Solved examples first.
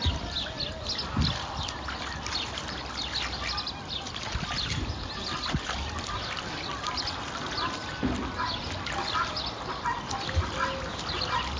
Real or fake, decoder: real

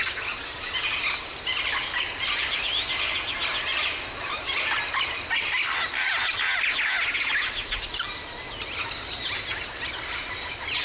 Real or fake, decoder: real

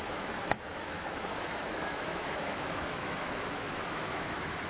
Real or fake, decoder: fake, autoencoder, DAC-VAE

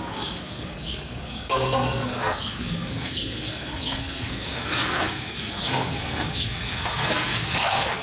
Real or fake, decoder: fake, codec, SNAC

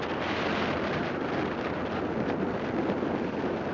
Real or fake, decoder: real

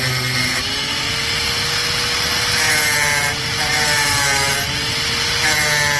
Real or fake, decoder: real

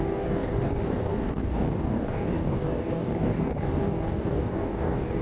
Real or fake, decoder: fake, codec, DAC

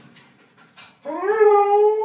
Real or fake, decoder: real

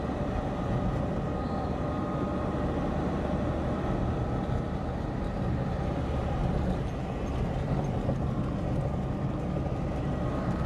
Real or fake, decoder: real